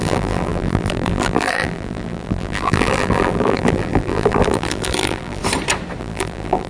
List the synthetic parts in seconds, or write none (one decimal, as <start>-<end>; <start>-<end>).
0.0-5.4; 6.0-6.7